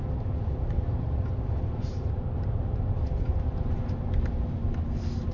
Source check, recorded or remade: recorded